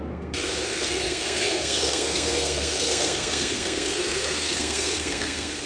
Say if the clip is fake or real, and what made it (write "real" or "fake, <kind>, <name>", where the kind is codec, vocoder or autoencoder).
fake, codec, SNAC